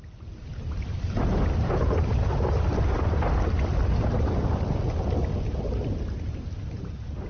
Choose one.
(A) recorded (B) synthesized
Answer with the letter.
A